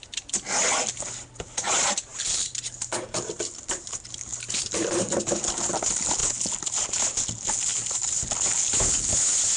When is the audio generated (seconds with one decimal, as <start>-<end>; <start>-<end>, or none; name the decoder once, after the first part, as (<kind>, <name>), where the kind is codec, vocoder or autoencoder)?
2.1-5.0 (vocoder, BigVGAN v2); 7.7-8.3